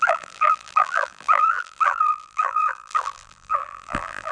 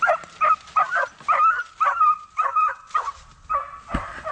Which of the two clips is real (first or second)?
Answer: second